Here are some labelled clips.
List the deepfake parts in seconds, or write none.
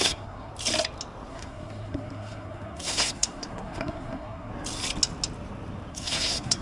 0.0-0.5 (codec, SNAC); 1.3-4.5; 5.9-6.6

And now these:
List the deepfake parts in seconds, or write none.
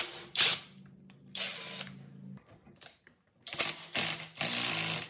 none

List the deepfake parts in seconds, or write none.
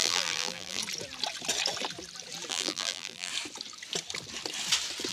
0.0-0.8 (vocoder, BigVGAN v2); 2.5-3.3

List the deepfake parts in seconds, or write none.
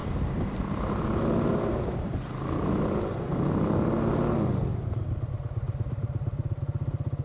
0.0-3.5 (vocoder, BigVGAN v2); 4.7-6.6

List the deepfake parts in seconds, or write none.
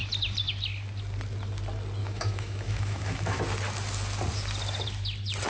2.0-3.4 (autoencoder, DAC-VAE)